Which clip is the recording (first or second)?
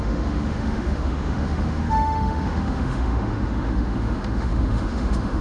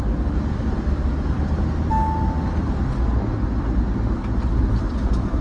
second